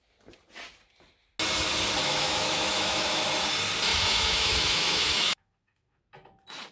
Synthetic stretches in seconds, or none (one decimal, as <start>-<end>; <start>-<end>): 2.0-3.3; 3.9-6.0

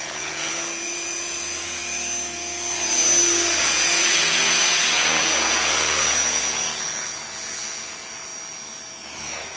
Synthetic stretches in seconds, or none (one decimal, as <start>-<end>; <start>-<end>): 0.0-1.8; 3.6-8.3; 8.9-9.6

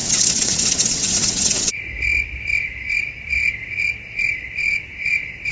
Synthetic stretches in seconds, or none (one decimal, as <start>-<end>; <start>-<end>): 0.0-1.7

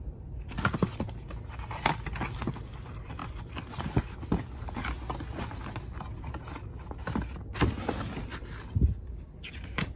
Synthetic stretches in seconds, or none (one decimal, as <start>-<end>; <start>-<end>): none

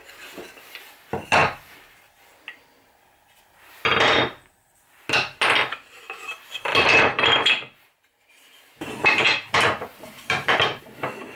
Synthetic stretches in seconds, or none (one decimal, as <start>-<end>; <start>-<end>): 1.4-2.0; 6.7-10.8